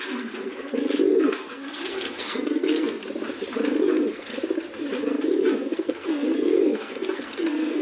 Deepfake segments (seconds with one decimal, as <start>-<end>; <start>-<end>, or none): 0.0-3.0; 3.8-4.3; 5.0-7.8